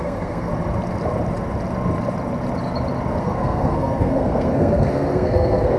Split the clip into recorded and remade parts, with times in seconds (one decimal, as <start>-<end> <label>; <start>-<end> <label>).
0.0-0.5 remade; 0.5-3.2 recorded; 3.2-5.8 remade